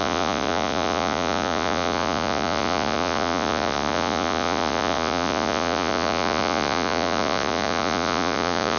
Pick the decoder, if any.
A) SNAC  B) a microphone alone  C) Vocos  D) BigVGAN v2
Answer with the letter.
C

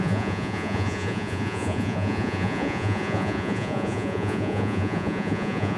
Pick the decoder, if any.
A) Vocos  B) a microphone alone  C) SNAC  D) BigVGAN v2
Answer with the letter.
A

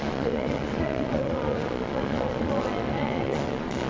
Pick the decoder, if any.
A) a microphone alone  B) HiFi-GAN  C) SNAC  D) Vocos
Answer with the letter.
D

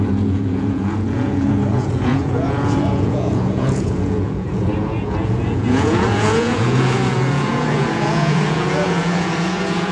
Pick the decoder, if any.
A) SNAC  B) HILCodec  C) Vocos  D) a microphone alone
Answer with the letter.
C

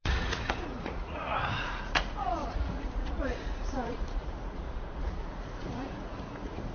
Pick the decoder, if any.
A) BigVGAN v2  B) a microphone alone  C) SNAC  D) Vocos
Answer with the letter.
D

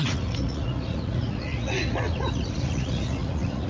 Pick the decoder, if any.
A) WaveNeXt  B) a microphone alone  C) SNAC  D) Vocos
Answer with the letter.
D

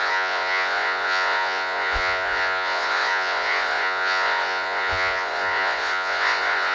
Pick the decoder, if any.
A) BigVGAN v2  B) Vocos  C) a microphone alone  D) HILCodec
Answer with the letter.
B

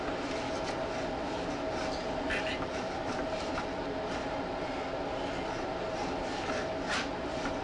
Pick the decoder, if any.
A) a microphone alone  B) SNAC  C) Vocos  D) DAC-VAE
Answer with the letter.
A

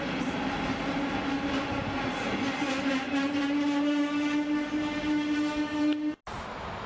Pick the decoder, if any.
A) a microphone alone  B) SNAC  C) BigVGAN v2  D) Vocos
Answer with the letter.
A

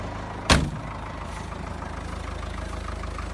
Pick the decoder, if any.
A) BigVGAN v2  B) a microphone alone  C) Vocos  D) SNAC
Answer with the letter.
B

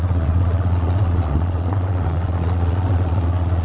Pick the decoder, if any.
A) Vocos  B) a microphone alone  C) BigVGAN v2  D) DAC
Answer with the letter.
A